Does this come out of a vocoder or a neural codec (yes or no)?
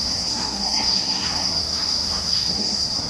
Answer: yes